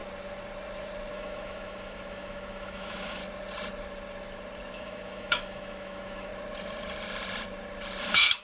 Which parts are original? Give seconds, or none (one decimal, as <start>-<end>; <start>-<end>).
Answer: 0.0-1.1; 3.2-4.7; 6.3-8.0